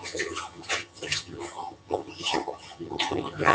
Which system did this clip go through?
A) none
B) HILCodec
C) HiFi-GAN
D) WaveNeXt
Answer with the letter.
C